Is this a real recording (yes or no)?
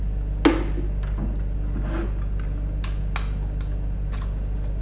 yes